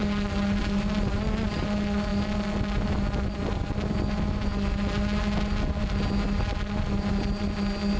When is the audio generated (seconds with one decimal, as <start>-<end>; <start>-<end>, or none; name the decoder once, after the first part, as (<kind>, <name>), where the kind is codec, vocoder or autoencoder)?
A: none